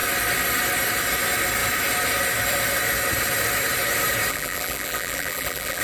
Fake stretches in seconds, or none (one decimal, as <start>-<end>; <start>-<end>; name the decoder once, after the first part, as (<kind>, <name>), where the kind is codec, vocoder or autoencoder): 4.3-5.8 (vocoder, BigVGAN v2)